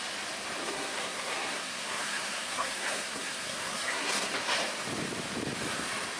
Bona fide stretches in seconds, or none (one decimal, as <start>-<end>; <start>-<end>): 0.0-0.6; 4.3-6.2